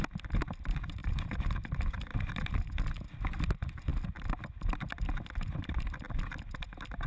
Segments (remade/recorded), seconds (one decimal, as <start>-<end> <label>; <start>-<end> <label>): 0.0-1.0 recorded; 1.0-2.1 remade; 2.1-7.1 recorded